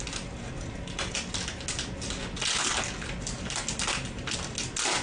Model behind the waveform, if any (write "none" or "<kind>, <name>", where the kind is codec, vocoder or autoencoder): none